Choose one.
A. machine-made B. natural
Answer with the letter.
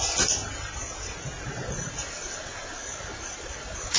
B